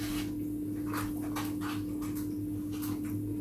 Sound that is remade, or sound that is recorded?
recorded